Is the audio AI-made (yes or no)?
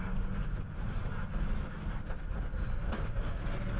no